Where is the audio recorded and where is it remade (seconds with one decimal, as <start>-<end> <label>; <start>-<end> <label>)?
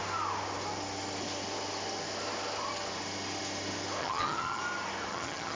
0.0-4.0 recorded; 4.0-4.6 remade; 4.6-5.1 recorded; 5.1-5.6 remade